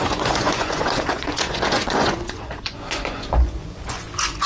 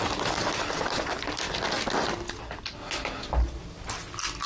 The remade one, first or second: first